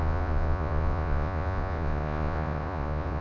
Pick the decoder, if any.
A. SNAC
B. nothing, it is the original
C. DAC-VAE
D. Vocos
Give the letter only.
D